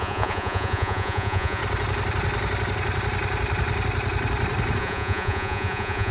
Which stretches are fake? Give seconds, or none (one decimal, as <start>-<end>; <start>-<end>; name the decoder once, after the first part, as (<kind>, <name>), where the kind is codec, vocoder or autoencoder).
0.0-1.6 (vocoder, Vocos); 4.8-6.1